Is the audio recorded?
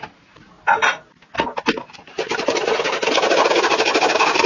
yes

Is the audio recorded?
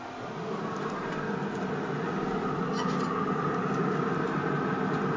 yes